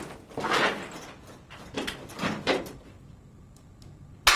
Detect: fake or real real